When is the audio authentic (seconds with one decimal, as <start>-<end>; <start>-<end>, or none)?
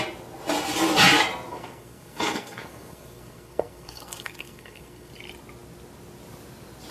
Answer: 0.0-1.5; 5.1-6.9